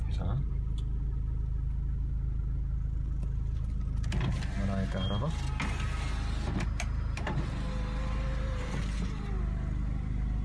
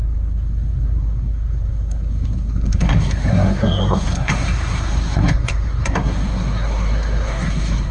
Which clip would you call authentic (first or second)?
first